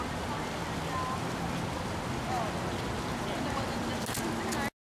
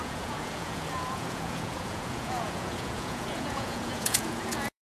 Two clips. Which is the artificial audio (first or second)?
second